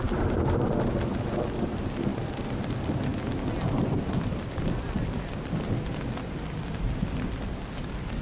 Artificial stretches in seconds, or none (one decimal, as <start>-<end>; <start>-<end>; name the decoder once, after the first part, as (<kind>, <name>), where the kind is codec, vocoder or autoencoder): 0.0-3.1 (vocoder, BigVGAN v2); 3.7-8.2